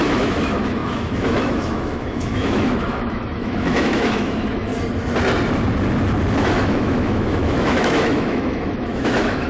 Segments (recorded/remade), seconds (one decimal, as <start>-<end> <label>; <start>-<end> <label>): 0.0-4.7 remade; 4.7-6.4 recorded; 6.4-9.5 remade